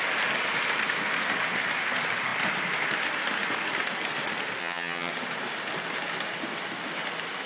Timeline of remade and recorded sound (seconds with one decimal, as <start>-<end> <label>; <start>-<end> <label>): 0.0-4.6 recorded; 4.6-5.1 remade; 5.1-7.5 recorded